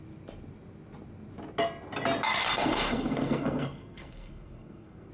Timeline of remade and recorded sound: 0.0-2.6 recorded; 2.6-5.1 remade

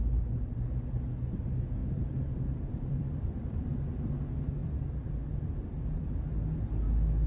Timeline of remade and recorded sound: 0.0-1.8 recorded; 1.8-4.1 remade; 4.1-4.6 recorded; 4.6-6.3 remade; 6.3-7.3 recorded

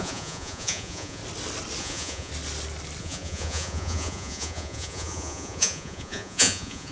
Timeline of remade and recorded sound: 0.0-1.2 remade; 1.2-1.8 recorded; 1.8-2.3 remade; 2.3-3.0 recorded; 3.0-6.9 remade